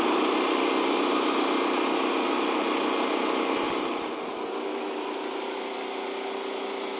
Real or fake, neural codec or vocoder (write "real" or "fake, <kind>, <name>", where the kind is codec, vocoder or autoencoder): real